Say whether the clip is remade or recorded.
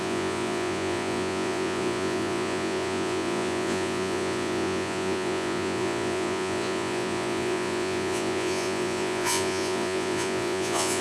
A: remade